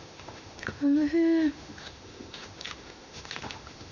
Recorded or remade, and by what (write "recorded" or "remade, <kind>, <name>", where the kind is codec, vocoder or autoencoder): remade, autoencoder, DAC-VAE